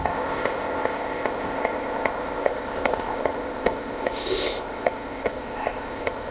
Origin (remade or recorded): remade